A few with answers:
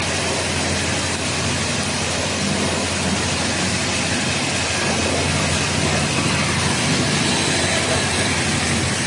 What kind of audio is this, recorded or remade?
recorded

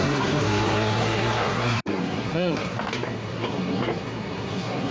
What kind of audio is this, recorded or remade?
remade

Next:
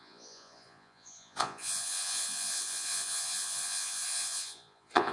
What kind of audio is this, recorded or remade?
remade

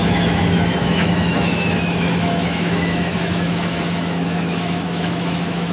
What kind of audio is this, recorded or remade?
remade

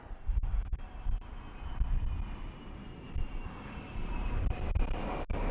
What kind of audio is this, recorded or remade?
recorded